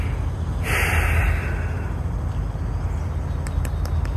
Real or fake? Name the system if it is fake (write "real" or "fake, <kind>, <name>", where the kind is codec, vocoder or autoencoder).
real